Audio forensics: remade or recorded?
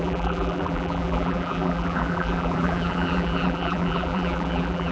remade